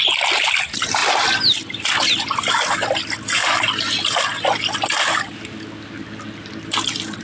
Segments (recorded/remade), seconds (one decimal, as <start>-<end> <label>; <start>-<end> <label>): 0.0-7.2 recorded

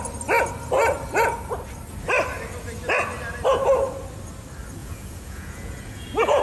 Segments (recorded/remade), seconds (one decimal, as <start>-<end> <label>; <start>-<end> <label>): 0.0-4.8 recorded; 4.8-6.4 remade

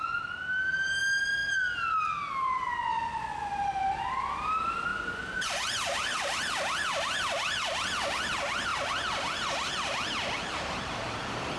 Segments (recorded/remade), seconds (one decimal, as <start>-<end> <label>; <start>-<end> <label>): 0.0-2.8 recorded; 2.8-3.5 remade; 3.5-4.9 recorded; 4.9-5.5 remade; 5.5-11.6 recorded

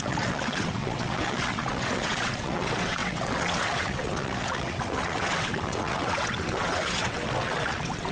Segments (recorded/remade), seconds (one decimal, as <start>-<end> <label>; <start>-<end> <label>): 0.0-8.1 remade

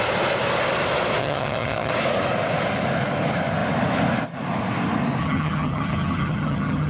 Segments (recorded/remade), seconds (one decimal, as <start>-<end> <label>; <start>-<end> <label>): 0.0-1.2 recorded; 1.2-1.9 remade; 1.9-5.2 recorded; 5.2-6.9 remade

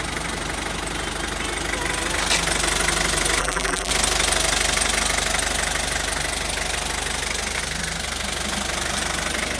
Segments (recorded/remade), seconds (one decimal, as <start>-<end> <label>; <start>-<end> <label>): 0.0-3.4 recorded; 3.4-3.9 remade; 3.9-9.6 recorded

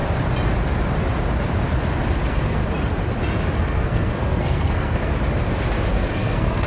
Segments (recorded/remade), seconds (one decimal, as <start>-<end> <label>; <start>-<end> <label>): 0.0-2.1 recorded; 2.1-2.6 remade; 2.6-3.5 recorded; 3.5-5.1 remade; 5.1-5.9 recorded; 5.9-6.7 remade